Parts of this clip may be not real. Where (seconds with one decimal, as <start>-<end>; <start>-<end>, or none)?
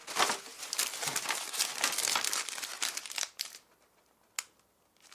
none